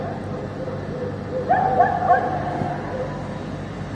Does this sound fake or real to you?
real